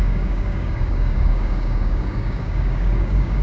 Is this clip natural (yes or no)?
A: no